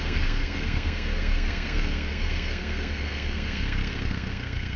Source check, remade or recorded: remade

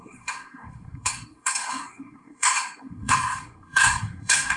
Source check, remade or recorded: remade